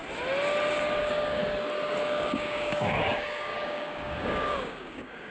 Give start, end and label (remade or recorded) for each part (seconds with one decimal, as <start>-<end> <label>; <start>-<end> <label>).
0.0-1.0 recorded; 1.0-1.4 remade; 1.4-2.0 recorded; 2.0-5.3 remade